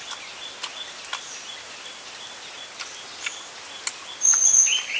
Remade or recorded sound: recorded